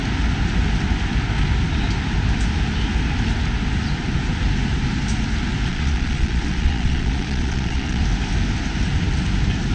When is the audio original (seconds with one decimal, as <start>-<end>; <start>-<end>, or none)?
0.0-5.7; 8.0-9.7